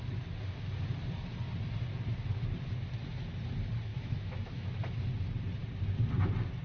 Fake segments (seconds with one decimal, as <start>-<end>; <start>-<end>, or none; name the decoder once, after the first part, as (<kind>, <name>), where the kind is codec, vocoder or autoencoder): 3.9-4.9 (autoencoder, DAC-VAE)